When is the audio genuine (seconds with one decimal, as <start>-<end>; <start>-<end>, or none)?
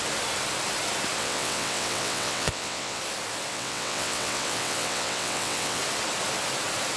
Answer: 0.0-1.2; 3.0-3.5; 5.8-7.0